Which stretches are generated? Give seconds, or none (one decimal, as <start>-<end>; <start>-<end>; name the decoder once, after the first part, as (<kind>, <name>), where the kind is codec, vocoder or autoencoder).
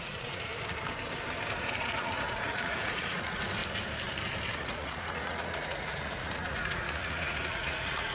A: 0.0-0.5 (vocoder, Vocos); 1.6-3.6; 4.6-8.1